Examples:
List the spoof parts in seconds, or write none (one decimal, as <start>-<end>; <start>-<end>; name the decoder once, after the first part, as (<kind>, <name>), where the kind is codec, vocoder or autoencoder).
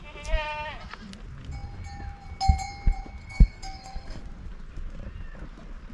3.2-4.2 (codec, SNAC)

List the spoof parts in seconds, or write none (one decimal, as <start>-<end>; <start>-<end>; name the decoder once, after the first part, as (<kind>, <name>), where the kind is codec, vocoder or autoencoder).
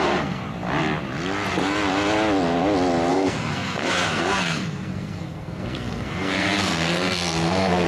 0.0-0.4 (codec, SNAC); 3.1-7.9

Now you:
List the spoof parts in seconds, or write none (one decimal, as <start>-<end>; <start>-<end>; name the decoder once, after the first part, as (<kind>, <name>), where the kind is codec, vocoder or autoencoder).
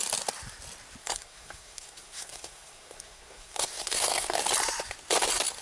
1.0-4.4 (codec, SNAC)